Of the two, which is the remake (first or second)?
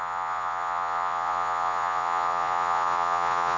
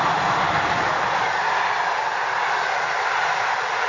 first